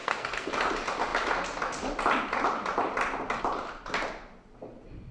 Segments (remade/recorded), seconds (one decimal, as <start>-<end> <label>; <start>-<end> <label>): 0.0-0.5 remade; 0.5-5.1 recorded